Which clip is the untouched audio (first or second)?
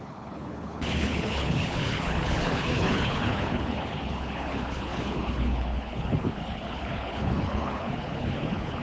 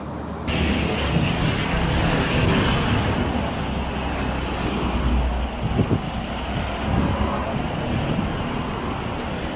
second